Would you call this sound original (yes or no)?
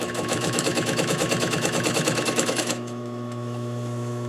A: no